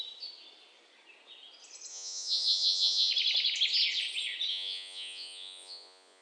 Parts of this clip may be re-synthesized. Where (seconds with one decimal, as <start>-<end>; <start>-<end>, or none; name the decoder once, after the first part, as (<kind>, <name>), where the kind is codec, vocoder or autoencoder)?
1.9-3.1 (vocoder, Vocos); 4.5-6.2